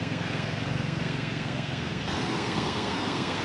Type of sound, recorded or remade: remade